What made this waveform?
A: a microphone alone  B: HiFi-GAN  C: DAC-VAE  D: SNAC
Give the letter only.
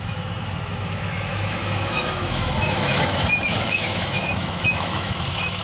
C